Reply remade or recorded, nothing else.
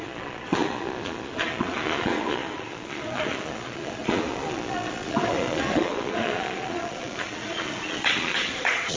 remade